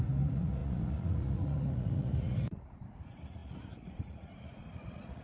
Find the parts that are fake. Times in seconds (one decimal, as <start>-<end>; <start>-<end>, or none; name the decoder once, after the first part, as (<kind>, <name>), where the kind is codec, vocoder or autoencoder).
0.0-5.2 (vocoder, Vocos)